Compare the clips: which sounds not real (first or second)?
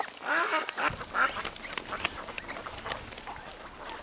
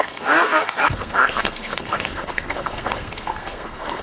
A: second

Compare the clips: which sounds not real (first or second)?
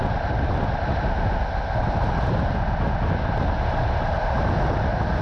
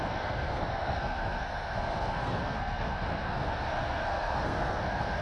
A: second